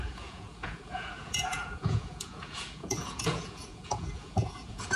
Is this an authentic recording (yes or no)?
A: no